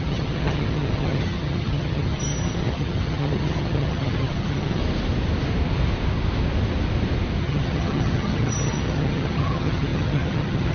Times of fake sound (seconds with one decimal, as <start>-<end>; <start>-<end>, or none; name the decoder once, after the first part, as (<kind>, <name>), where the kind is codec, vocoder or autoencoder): 0.0-4.8 (vocoder, HiFi-GAN); 7.4-10.7